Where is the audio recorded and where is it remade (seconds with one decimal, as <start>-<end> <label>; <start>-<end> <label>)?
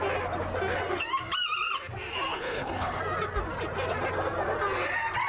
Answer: 0.0-2.3 recorded; 2.3-3.0 remade; 3.0-5.3 recorded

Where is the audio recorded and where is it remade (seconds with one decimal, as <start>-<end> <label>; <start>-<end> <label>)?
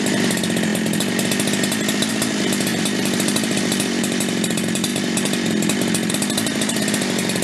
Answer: 0.0-0.7 remade; 0.7-2.1 recorded; 2.1-4.9 remade; 4.9-6.1 recorded; 6.1-7.4 remade